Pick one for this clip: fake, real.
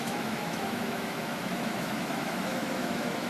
fake